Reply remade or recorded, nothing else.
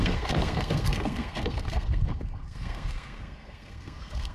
remade